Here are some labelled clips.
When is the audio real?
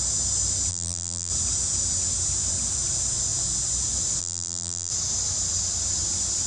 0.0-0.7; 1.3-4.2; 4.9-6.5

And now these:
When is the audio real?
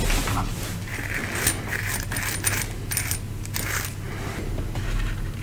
0.0-5.4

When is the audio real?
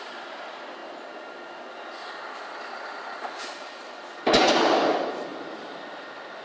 0.0-6.4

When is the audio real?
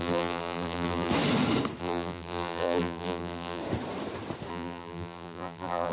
1.1-1.8; 3.6-4.5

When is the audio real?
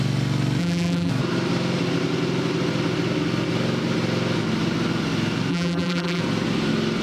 0.0-0.6; 1.1-5.5; 6.2-7.0